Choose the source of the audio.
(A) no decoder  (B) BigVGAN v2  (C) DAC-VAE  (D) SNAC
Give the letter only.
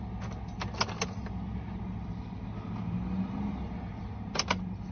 A